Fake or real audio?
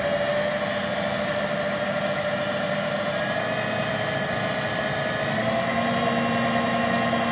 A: real